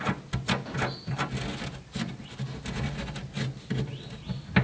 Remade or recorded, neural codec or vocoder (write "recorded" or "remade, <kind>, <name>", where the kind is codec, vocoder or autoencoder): recorded